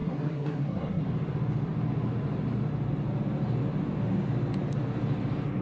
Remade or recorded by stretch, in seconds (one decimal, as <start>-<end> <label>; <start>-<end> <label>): 0.0-1.0 remade; 1.0-5.6 recorded